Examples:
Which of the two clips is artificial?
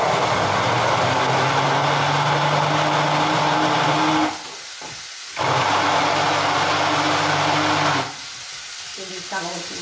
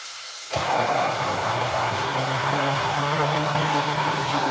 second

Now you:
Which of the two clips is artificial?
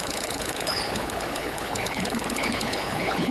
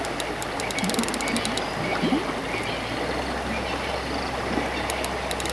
first